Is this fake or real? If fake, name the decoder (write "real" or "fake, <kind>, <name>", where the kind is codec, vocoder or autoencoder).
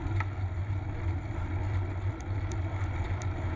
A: real